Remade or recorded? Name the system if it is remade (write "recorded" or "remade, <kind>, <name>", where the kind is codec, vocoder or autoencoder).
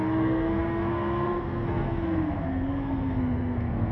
remade, codec, SNAC